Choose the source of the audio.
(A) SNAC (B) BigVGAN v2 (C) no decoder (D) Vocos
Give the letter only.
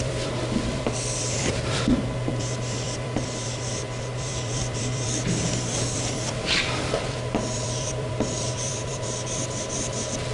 B